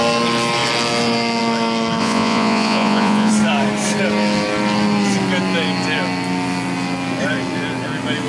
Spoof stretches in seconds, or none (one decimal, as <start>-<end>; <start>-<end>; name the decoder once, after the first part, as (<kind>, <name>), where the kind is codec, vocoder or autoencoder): 2.0-3.3 (vocoder, Vocos)